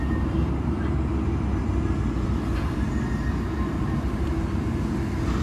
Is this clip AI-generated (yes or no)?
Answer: no